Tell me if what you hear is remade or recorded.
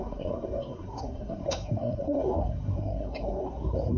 remade